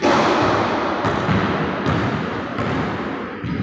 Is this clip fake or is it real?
real